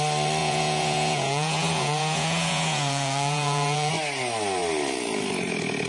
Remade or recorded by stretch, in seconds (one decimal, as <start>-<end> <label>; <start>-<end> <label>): 0.0-0.4 recorded; 0.4-3.9 remade; 3.9-5.9 recorded